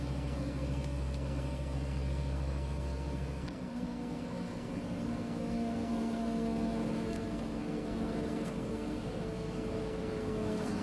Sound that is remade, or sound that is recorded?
remade